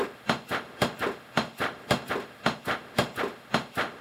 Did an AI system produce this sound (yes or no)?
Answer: no